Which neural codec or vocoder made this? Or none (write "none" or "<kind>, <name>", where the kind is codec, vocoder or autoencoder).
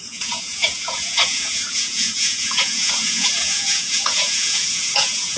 vocoder, Vocos